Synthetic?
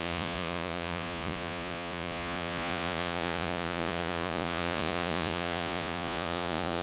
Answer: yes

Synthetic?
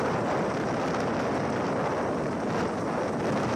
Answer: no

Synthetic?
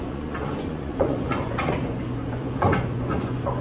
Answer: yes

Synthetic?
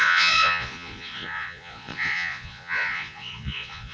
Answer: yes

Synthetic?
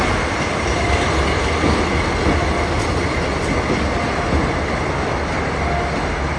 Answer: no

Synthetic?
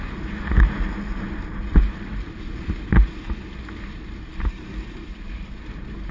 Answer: no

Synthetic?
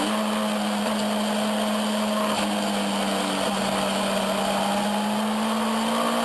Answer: no